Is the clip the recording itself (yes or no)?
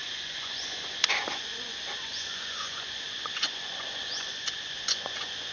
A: no